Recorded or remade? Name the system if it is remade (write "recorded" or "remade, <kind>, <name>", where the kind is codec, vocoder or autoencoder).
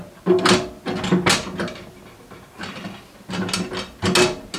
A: recorded